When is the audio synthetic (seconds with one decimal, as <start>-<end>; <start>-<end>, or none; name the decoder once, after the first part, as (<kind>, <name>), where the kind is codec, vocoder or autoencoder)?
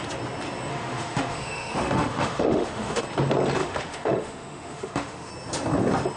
0.7-3.0 (autoencoder, DAC-VAE); 3.6-5.3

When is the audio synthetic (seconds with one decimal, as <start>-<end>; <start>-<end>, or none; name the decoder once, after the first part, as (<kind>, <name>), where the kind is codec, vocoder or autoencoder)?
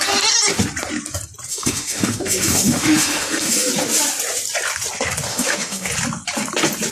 1.5-3.7 (autoencoder, DAC-VAE); 5.3-5.9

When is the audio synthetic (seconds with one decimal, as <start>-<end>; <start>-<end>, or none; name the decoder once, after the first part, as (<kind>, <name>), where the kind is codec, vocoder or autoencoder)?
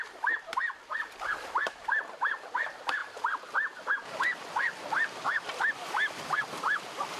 none